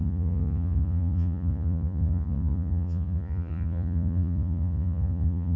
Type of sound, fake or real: fake